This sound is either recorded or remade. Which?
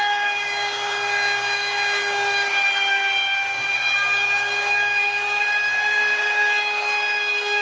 remade